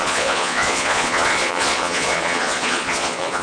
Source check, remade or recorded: remade